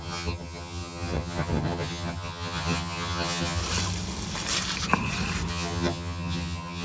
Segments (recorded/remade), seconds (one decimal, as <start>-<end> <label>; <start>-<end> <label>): 0.0-3.6 remade; 3.6-5.5 recorded; 5.5-6.8 remade